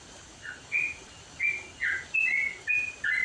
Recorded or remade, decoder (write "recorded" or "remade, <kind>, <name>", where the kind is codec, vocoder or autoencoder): recorded